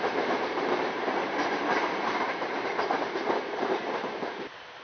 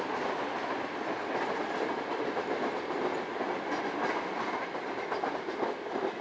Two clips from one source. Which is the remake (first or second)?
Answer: first